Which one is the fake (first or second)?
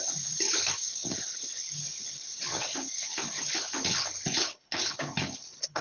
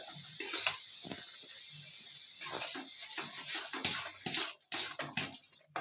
first